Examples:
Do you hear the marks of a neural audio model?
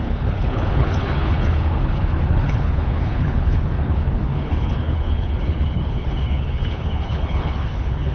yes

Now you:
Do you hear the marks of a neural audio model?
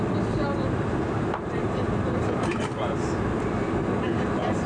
yes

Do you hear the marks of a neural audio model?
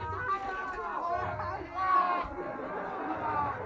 no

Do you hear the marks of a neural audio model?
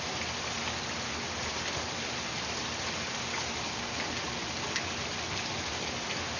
no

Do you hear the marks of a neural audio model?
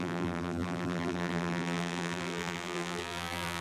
yes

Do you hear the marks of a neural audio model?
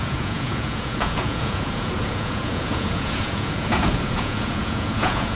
yes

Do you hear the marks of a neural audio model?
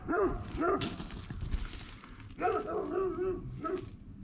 no